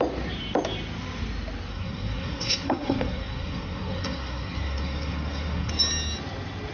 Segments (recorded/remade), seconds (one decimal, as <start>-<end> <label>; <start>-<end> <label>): 0.0-1.7 recorded; 1.7-5.7 remade; 5.7-6.7 recorded